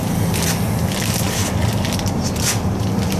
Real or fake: real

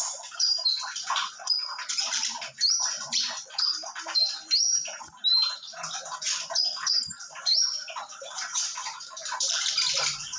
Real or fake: fake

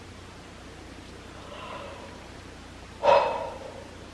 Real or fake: fake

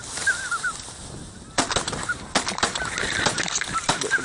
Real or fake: real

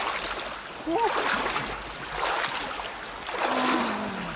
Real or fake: real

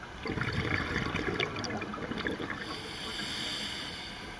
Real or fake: real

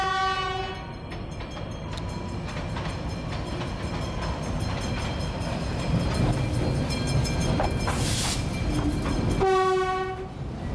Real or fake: real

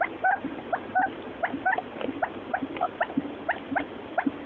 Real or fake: fake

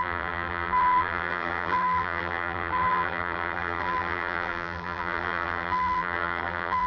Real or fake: fake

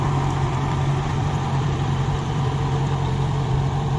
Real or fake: fake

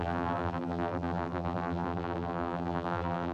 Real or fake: fake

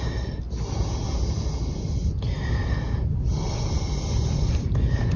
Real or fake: real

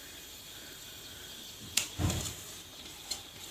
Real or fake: fake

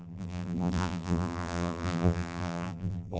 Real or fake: fake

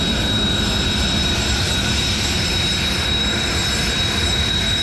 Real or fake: real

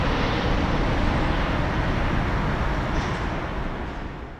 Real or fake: real